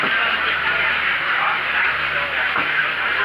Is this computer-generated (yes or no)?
no